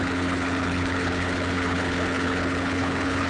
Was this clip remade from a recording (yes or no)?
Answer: yes